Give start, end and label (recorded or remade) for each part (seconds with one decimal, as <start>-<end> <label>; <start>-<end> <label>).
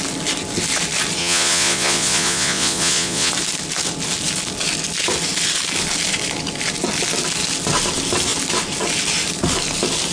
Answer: 0.0-1.2 recorded; 1.2-3.3 remade; 3.3-10.1 recorded